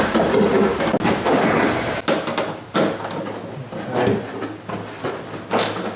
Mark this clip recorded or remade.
recorded